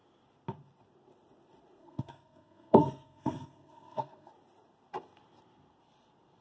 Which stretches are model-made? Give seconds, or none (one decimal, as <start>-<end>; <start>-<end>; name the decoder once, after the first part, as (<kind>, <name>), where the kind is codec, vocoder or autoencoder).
1.8-4.3 (codec, SNAC)

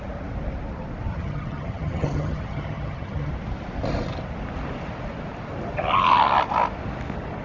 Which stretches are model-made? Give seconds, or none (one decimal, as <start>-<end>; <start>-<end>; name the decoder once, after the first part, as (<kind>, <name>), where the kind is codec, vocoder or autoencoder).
1.1-3.3 (vocoder, HiFi-GAN)

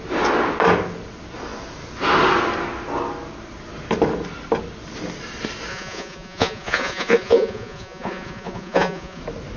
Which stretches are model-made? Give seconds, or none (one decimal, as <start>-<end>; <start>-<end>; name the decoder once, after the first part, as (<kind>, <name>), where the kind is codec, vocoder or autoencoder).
5.7-9.2 (vocoder, Vocos)

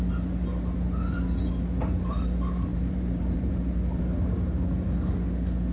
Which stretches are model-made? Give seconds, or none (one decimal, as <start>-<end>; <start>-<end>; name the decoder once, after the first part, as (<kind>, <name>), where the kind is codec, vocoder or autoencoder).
2.7-3.6 (vocoder, BigVGAN v2)

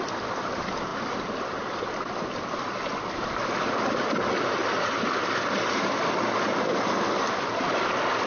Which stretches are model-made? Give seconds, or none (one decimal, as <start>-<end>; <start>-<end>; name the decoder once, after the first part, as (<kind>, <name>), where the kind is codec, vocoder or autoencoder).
none

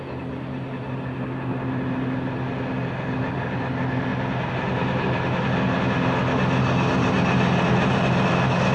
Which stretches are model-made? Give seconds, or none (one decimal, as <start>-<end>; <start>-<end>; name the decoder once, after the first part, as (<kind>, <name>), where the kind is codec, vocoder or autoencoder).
none

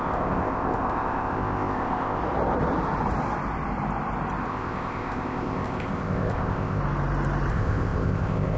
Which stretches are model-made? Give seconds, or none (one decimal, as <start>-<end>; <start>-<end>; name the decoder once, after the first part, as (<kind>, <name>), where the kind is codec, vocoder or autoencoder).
0.0-2.2 (codec, ZipCodec); 4.5-6.8; 7.5-8.6